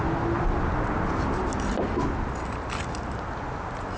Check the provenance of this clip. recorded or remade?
recorded